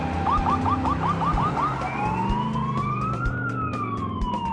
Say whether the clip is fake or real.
real